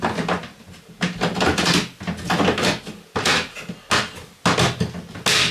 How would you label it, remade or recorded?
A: recorded